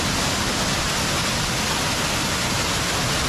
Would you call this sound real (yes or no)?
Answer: yes